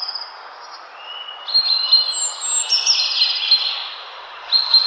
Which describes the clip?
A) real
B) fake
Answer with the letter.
A